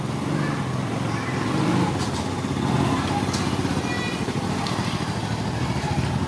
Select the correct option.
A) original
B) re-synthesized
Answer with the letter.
A